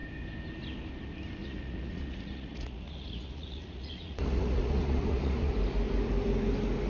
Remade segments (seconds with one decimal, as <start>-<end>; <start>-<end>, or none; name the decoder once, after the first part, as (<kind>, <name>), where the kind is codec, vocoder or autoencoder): 1.4-5.5 (vocoder, Vocos)